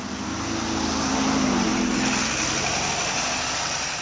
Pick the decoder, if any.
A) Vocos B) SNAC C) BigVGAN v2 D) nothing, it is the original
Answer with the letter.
D